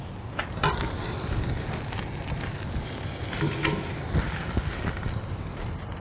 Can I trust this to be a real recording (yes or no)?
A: yes